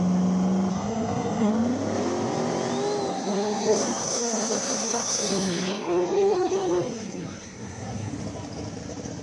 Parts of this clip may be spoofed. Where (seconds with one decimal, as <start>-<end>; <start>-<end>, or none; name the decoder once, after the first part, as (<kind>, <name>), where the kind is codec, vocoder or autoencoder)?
0.7-1.5 (codec, SNAC); 3.1-8.1